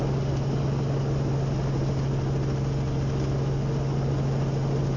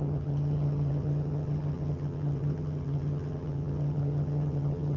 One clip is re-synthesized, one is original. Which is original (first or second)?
first